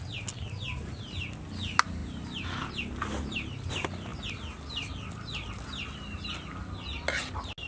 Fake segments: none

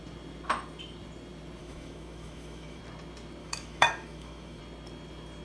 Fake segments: 1.6-2.8 (autoencoder, DAC-VAE); 3.4-4.6

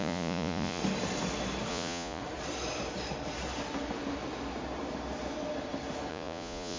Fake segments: 0.0-0.8 (vocoder, Vocos); 1.7-2.2; 6.1-6.8

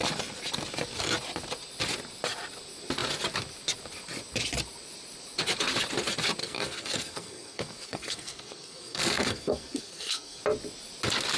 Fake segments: 6.4-10.4 (codec, SNAC)